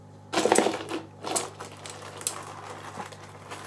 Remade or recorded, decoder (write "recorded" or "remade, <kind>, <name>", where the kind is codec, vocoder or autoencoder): recorded